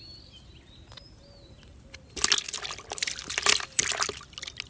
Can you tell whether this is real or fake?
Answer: real